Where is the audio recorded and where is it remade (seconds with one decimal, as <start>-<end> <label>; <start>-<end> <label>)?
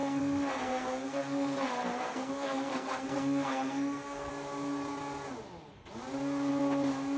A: 0.0-4.3 remade; 4.3-7.2 recorded